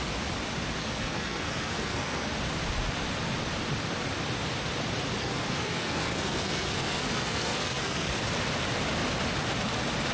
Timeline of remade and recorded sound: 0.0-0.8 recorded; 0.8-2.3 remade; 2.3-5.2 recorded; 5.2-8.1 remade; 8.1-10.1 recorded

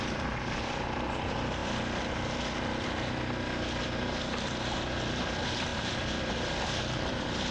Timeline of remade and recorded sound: 0.0-1.6 remade; 1.6-5.2 recorded; 5.2-7.5 remade